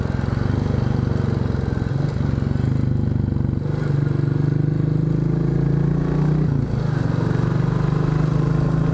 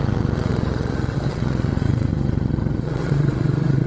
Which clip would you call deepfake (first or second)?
second